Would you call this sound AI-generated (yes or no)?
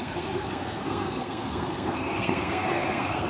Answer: yes